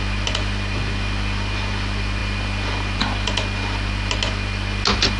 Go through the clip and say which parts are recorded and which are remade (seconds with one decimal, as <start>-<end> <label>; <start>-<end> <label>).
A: 0.0-5.2 recorded